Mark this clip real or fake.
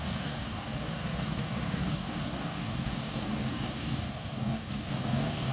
fake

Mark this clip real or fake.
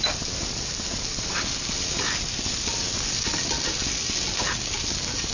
real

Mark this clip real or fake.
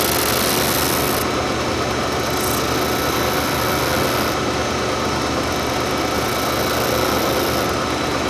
real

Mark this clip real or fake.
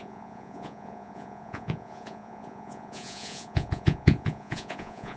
fake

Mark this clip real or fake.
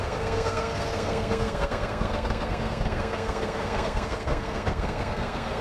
fake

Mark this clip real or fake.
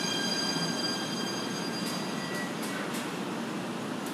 real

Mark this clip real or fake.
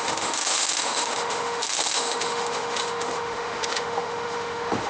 fake